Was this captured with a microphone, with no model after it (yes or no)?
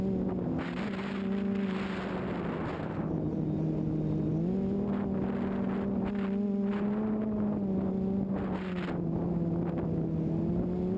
yes